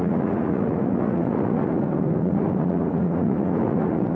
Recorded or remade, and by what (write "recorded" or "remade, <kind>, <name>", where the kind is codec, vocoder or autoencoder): remade, vocoder, Vocos